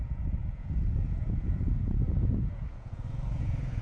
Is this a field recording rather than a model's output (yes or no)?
no